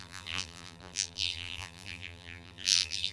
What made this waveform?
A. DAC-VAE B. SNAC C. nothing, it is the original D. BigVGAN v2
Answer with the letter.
D